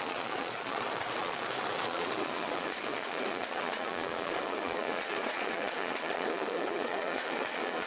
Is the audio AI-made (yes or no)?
yes